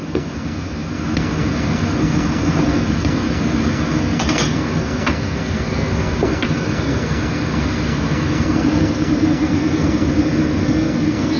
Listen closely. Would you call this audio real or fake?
fake